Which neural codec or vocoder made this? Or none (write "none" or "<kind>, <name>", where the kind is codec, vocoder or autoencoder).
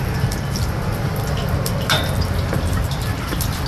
none